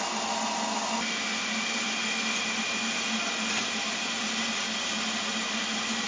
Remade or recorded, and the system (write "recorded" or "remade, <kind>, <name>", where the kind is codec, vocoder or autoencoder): recorded